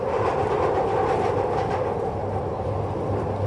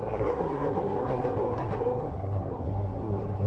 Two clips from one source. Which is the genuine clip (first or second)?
first